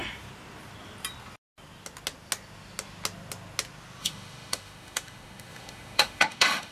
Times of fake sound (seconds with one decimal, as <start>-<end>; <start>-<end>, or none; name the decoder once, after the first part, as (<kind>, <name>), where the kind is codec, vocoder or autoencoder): 4.0-6.7 (autoencoder, DAC-VAE)